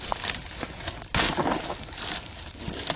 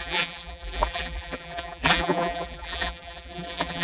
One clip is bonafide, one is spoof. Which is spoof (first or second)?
second